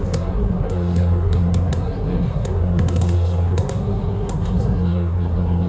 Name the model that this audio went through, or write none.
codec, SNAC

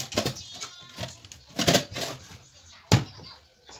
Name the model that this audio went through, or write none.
none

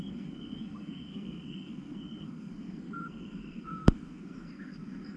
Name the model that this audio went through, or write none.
codec, SNAC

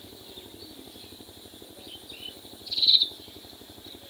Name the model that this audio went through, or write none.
none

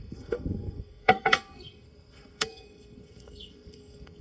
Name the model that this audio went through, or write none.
codec, SNAC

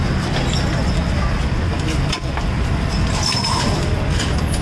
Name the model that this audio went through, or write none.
none